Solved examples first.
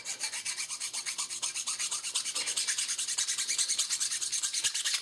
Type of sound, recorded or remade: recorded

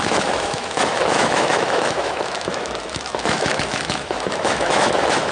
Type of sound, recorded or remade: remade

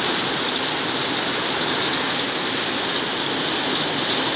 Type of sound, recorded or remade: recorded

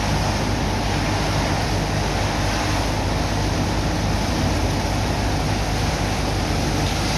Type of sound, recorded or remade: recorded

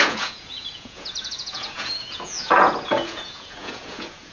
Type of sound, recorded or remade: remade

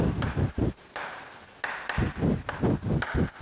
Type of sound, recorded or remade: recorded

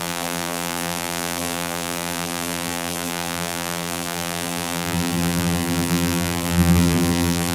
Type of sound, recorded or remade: remade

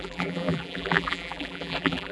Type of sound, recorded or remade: remade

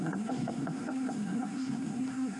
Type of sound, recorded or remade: remade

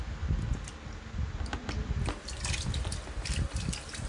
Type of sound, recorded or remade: recorded